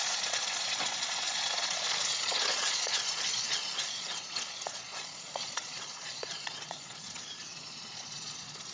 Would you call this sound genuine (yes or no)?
no